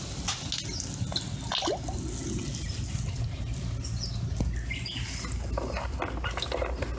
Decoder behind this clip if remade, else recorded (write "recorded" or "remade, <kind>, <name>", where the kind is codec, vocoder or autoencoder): recorded